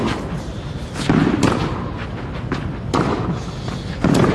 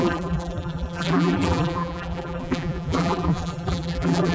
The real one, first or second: first